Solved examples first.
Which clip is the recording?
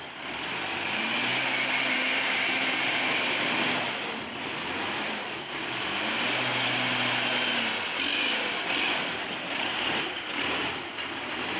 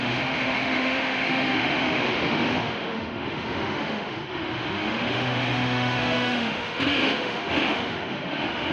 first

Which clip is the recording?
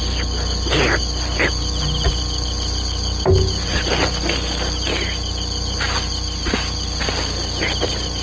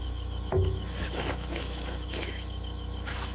first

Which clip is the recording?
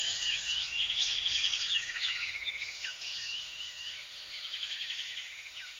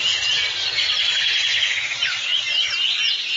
second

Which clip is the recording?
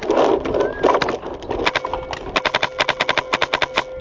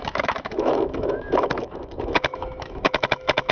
first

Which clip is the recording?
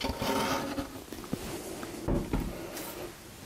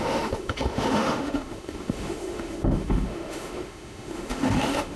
first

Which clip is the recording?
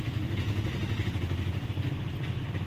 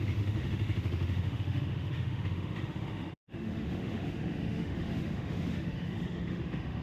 first